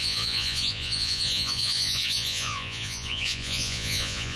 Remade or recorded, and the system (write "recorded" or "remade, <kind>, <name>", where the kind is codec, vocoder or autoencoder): remade, vocoder, Vocos